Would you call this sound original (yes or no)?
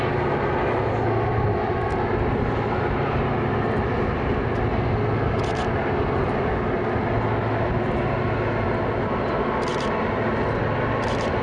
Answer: yes